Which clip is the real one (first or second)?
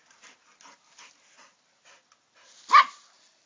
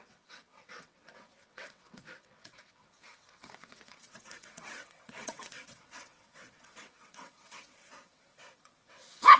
first